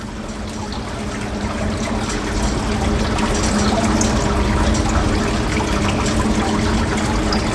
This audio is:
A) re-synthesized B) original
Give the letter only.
B